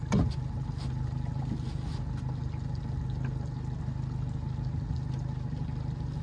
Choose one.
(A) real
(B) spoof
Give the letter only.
A